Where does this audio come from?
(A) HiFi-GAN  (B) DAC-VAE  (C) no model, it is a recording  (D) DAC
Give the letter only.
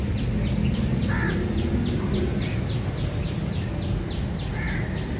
C